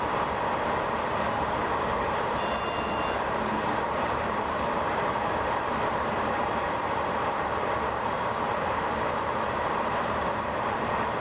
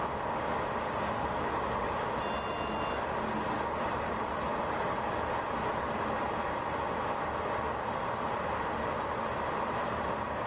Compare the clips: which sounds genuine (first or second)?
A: second